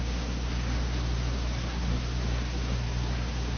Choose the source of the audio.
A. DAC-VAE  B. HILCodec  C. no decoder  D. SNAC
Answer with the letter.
D